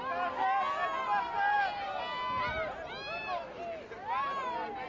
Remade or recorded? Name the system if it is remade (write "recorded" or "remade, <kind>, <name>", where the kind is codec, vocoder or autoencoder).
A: recorded